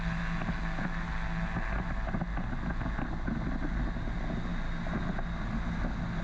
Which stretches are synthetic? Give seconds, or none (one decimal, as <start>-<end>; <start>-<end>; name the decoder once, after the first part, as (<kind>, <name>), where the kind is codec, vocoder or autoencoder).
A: none